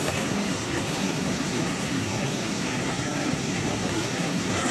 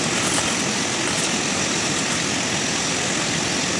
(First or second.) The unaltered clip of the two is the second